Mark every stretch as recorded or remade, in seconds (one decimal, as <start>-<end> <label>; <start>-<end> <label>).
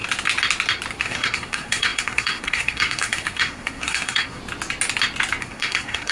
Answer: 0.0-1.0 recorded; 1.0-4.4 remade; 4.4-5.4 recorded; 5.4-6.1 remade